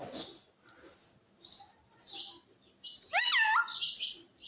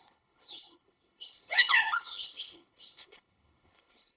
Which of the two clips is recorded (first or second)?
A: first